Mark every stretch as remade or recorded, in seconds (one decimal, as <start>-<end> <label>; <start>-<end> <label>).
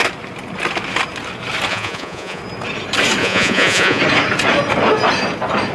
0.0-1.7 recorded; 1.7-2.4 remade; 2.4-3.2 recorded; 3.2-4.0 remade; 4.0-5.7 recorded